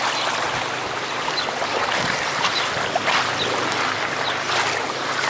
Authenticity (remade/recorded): recorded